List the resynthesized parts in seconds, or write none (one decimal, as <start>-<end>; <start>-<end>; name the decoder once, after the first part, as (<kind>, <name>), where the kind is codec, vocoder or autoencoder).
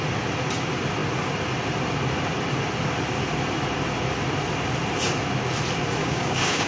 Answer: 6.0-6.7 (codec, DAC)